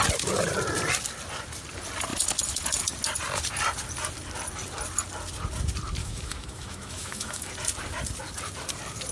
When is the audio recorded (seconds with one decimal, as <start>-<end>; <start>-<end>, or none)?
0.0-6.0; 7.5-9.1